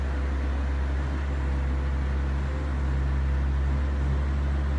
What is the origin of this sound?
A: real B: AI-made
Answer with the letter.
A